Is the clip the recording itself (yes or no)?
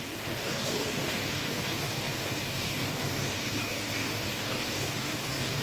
no